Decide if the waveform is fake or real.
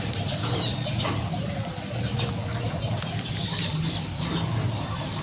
real